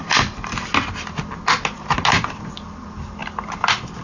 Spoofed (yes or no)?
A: no